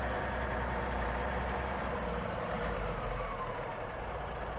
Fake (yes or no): yes